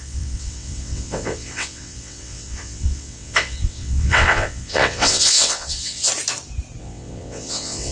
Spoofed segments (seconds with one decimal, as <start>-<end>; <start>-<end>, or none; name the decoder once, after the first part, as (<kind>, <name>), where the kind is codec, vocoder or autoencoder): 0.0-6.1 (vocoder, WaveNeXt); 6.8-7.9